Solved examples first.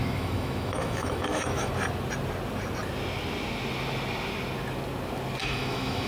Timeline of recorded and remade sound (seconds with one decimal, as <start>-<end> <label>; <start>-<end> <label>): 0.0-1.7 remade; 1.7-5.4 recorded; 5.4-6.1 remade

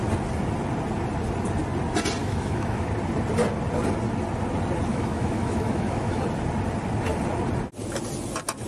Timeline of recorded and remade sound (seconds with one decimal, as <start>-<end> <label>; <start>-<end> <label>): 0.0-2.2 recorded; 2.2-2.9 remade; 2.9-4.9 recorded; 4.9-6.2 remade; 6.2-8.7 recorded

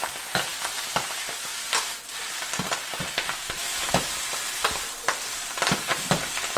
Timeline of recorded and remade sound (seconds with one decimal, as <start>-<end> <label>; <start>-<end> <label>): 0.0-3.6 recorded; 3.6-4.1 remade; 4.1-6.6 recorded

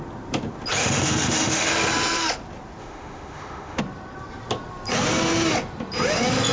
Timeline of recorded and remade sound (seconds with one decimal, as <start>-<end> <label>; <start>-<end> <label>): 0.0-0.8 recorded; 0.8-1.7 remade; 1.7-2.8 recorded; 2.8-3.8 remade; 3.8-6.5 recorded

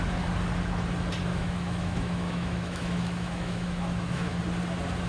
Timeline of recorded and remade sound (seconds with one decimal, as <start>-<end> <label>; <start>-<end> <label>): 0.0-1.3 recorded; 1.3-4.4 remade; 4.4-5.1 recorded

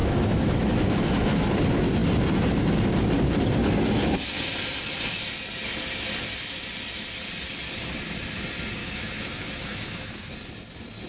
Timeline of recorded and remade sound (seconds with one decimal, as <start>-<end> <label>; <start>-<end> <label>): 0.0-1.5 remade; 1.5-8.8 recorded; 8.8-10.3 remade; 10.3-11.1 recorded

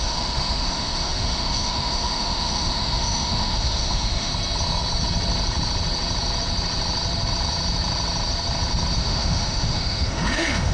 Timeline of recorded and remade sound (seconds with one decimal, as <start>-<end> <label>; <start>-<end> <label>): 0.0-4.3 remade; 4.3-9.0 recorded; 9.0-10.7 remade

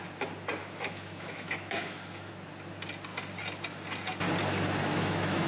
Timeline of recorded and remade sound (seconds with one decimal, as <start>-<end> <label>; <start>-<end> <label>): 0.0-0.6 recorded; 0.6-2.3 remade; 2.3-4.8 recorded; 4.8-5.5 remade